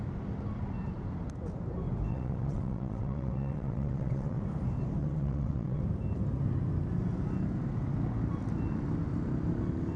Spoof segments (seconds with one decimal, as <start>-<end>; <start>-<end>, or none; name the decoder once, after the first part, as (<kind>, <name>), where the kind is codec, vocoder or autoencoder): 2.1-4.4 (vocoder, WaveNeXt); 5.0-5.8